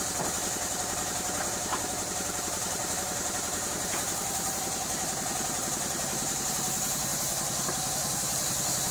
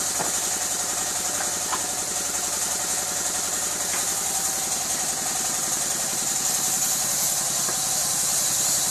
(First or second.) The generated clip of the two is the first